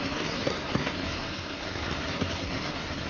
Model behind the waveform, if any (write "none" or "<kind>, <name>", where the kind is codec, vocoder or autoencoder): codec, SNAC